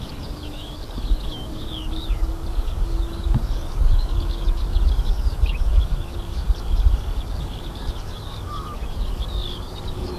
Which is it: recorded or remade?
remade